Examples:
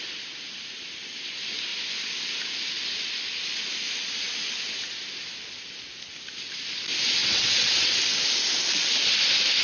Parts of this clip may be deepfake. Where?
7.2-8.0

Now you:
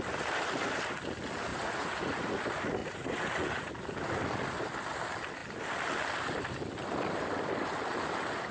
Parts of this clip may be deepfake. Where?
1.5-2.4; 2.8-3.7

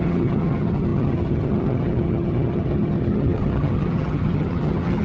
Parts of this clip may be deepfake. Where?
0.0-5.0

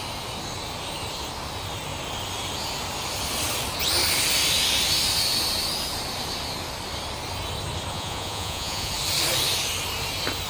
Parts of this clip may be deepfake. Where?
7.9-8.9

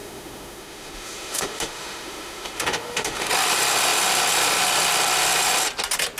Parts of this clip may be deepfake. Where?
0.0-3.3